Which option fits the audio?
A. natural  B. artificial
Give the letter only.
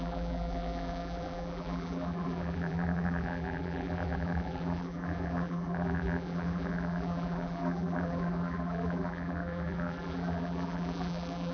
B